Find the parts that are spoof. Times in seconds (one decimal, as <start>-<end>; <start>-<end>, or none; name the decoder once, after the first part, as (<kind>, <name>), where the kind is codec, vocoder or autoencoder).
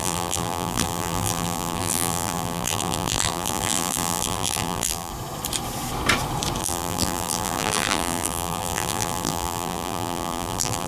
0.0-5.1 (vocoder, BigVGAN v2); 6.6-10.9